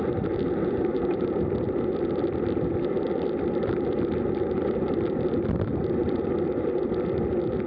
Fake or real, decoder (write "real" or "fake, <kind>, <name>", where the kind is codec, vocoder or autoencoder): real